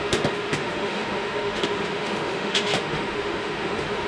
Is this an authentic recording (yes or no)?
no